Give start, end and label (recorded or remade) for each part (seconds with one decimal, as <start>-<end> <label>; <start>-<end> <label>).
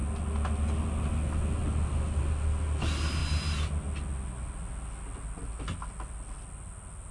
0.0-7.1 recorded